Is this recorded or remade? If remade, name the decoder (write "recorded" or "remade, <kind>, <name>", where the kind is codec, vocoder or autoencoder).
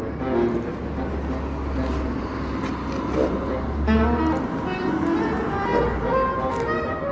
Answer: recorded